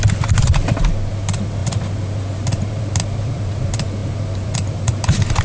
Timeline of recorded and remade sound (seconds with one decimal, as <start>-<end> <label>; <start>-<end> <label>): 0.0-5.4 recorded